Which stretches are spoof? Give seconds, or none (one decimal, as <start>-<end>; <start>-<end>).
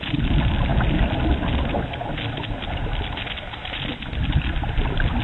none